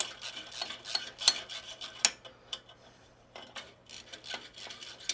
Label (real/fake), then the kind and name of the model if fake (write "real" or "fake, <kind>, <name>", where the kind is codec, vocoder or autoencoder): real